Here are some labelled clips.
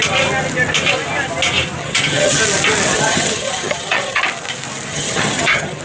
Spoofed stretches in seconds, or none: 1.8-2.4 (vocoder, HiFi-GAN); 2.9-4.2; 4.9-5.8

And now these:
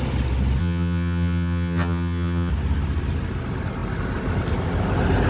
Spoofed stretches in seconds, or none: 0.6-2.5 (vocoder, HiFi-GAN)